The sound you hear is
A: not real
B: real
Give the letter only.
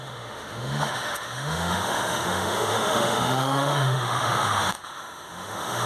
A